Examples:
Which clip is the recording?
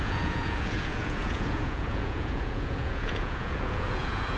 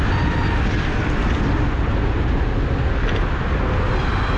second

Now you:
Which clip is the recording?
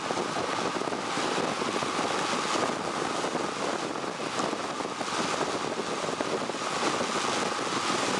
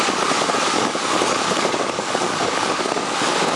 first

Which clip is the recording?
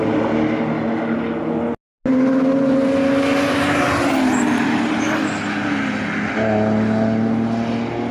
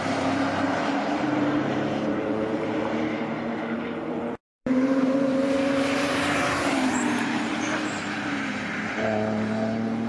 first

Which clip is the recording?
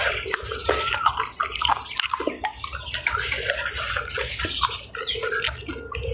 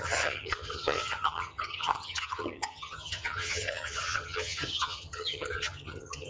first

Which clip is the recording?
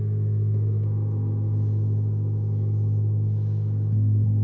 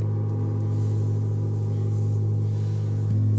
second